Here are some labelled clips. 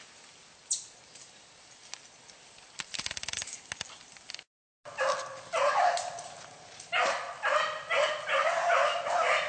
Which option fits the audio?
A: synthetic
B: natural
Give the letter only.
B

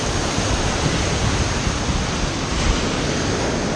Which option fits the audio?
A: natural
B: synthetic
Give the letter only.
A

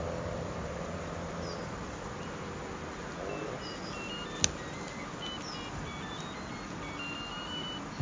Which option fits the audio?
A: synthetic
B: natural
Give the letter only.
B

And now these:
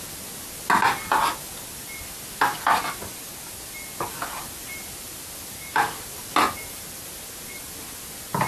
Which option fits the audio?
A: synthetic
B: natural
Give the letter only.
B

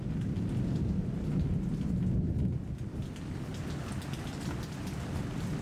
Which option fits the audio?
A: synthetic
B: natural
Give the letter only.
B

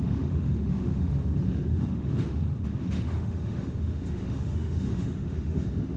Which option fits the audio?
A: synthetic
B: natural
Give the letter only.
A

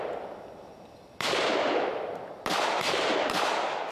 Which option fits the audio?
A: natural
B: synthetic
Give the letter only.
A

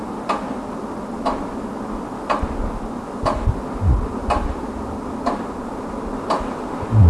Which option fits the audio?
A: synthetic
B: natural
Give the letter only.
B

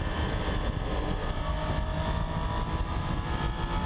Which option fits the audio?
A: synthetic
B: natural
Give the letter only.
B